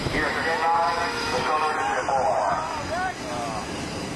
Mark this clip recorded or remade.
recorded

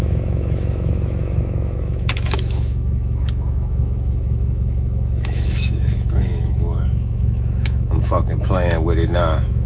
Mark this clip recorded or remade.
remade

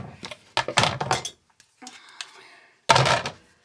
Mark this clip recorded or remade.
recorded